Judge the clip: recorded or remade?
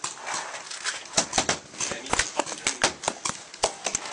recorded